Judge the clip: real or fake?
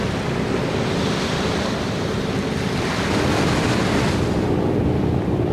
real